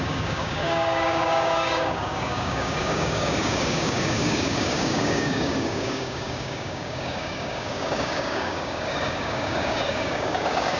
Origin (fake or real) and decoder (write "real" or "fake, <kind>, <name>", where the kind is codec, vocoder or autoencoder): fake, codec, DAC